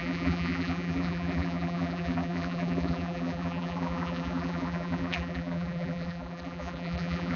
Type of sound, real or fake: fake